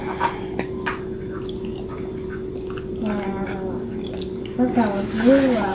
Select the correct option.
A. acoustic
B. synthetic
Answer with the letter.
A